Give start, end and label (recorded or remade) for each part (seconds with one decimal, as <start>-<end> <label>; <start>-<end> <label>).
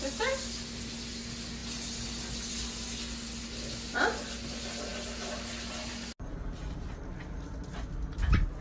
0.0-8.6 recorded